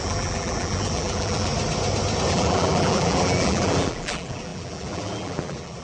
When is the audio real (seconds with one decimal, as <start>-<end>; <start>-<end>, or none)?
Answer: 1.5-2.3